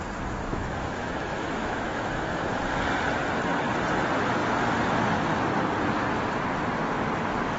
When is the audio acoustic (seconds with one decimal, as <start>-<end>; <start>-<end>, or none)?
0.0-0.5; 2.4-7.6

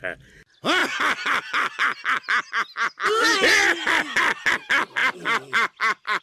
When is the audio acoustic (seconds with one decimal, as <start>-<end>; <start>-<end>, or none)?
0.0-6.2

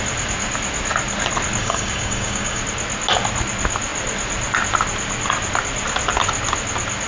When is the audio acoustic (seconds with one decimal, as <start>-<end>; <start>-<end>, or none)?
0.0-1.6; 2.6-7.1

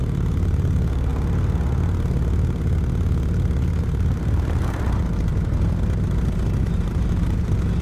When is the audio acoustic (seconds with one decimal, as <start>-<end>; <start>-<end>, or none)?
1.1-3.8; 5.3-6.6

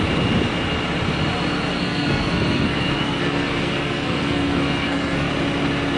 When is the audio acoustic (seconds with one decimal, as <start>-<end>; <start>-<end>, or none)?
0.0-1.7; 5.3-6.0

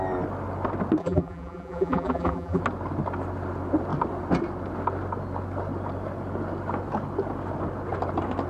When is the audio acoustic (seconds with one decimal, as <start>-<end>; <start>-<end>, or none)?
0.0-1.0; 2.6-8.5

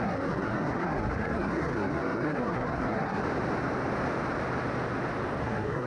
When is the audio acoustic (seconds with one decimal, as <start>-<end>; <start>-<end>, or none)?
3.2-5.4